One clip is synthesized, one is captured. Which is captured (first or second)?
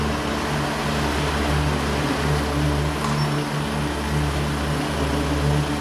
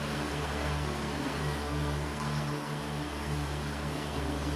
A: first